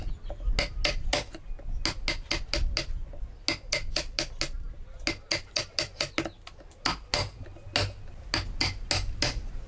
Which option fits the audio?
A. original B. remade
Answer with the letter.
A